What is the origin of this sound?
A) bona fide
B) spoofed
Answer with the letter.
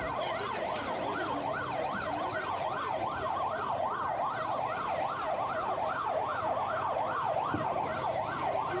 A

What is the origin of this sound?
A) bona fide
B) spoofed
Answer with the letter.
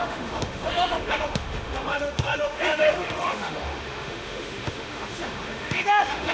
B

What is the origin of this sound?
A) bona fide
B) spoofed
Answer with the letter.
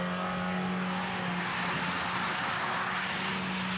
A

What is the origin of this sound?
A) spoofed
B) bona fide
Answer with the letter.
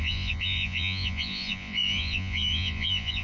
A